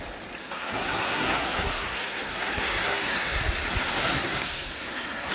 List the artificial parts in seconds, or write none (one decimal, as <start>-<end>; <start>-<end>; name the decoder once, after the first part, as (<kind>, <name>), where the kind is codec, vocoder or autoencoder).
0.4-3.4 (codec, SNAC); 4.0-5.3